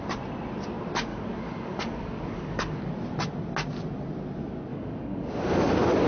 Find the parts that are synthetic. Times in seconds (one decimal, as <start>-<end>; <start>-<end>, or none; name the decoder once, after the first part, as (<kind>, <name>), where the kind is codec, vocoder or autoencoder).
1.1-2.9 (codec, DAC); 4.7-6.1